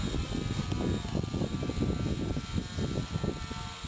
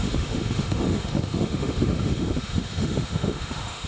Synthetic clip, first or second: second